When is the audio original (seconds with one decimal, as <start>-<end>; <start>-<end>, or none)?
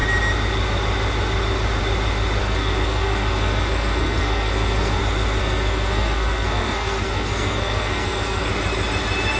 0.0-2.4; 5.0-5.4; 8.5-9.4